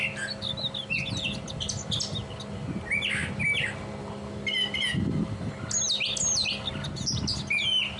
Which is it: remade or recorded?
recorded